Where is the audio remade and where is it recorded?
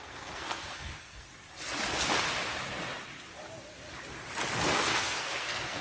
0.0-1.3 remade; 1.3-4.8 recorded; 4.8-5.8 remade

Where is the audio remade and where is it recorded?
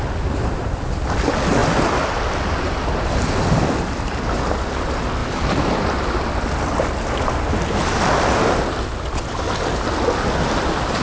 0.0-5.2 recorded; 5.2-5.8 remade; 5.8-11.0 recorded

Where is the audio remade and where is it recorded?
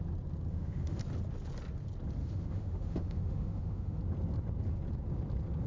0.0-0.5 recorded; 0.5-1.0 remade; 1.0-2.2 recorded; 2.2-4.0 remade; 4.0-5.7 recorded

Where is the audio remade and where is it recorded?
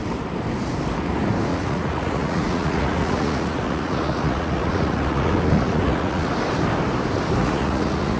0.0-1.5 recorded; 1.5-6.3 remade; 6.3-7.4 recorded; 7.4-8.2 remade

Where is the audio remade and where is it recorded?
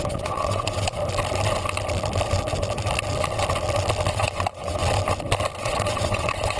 0.0-1.0 remade; 1.0-4.1 recorded; 4.1-4.8 remade; 4.8-5.6 recorded; 5.6-6.6 remade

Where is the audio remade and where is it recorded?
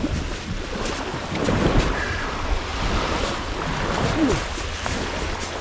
0.0-5.6 recorded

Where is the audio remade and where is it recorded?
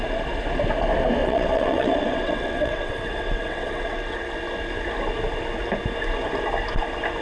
0.0-1.2 recorded; 1.2-4.3 remade; 4.3-7.2 recorded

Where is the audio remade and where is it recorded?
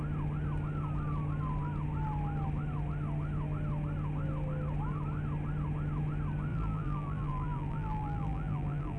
0.0-6.5 recorded; 6.5-9.0 remade